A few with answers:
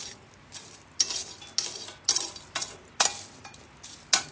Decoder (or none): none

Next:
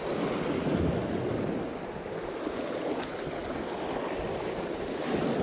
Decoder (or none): none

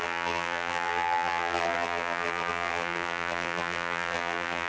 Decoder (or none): vocoder, BigVGAN v2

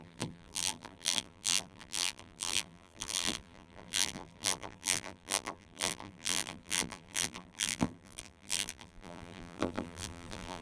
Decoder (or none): vocoder, BigVGAN v2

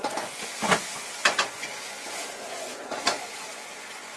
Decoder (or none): vocoder, Vocos